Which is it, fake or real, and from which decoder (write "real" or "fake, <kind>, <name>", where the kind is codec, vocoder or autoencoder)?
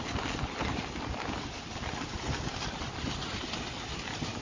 real